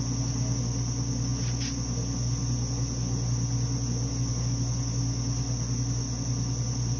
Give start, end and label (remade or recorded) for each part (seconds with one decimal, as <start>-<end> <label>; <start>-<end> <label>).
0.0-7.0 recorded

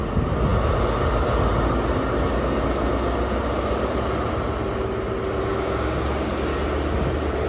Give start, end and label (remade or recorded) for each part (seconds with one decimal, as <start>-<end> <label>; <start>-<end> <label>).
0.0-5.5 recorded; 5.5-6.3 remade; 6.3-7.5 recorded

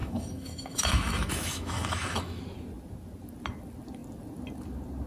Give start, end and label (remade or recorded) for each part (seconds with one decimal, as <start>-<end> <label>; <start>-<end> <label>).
0.0-2.4 remade; 2.4-5.1 recorded